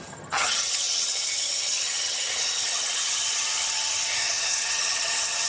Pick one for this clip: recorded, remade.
remade